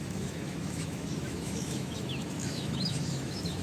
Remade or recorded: remade